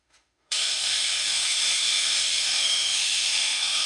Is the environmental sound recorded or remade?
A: remade